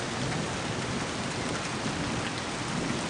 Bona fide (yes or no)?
yes